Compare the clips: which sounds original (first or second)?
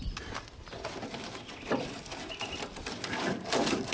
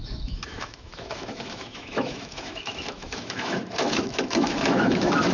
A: first